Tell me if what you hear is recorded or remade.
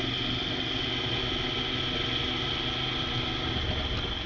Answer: recorded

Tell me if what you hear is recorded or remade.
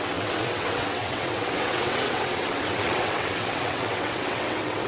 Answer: remade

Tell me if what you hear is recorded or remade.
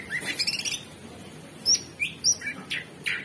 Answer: recorded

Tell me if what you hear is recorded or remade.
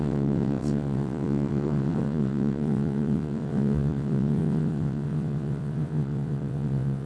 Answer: remade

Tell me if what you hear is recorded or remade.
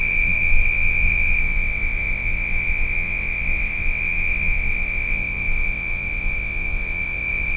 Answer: remade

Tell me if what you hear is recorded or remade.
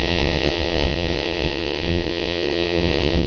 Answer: remade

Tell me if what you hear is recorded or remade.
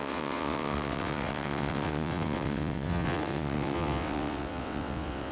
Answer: remade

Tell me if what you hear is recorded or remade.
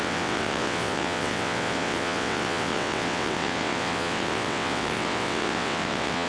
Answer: remade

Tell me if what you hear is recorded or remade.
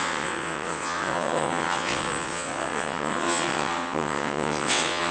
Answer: remade